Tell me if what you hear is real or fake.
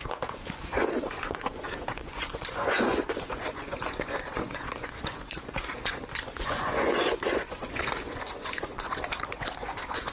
fake